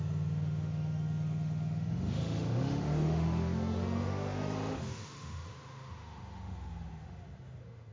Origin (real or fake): fake